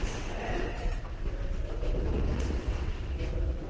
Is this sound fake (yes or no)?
yes